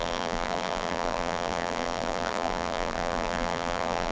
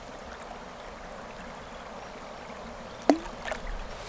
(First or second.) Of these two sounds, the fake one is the first